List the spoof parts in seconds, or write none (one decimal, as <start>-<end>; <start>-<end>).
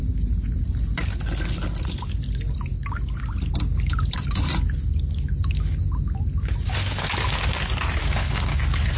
8.0-8.6